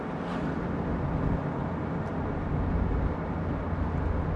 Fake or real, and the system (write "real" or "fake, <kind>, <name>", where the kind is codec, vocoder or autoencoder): real